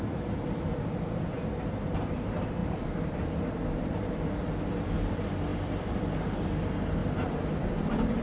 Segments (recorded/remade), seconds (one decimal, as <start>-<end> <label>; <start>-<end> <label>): 0.0-8.2 remade